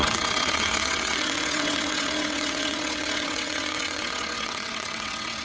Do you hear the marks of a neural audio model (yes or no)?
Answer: yes